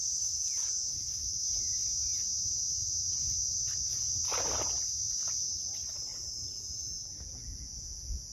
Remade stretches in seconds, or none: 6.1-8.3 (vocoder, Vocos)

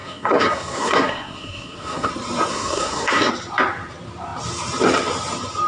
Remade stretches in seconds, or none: 0.0-2.1 (codec, SNAC); 2.5-3.3

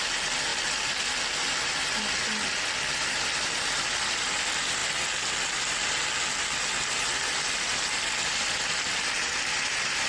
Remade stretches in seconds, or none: none

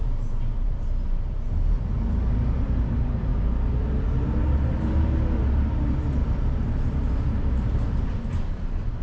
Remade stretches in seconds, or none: 0.0-9.0 (vocoder, BigVGAN v2)

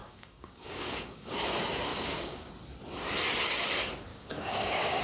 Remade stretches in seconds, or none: 0.0-1.4 (codec, DAC); 1.9-2.5; 4.1-5.0

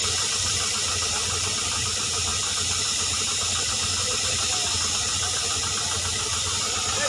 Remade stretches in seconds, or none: none